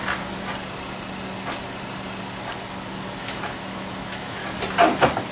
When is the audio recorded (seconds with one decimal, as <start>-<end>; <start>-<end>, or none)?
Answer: 0.0-3.2; 4.4-5.3